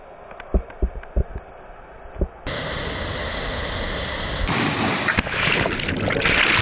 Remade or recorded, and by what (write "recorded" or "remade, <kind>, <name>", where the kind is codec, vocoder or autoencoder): recorded